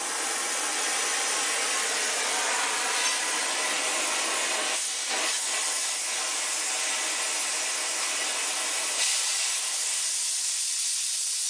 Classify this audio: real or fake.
real